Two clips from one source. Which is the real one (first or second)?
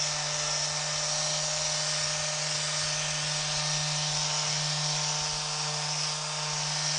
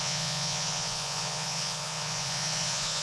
first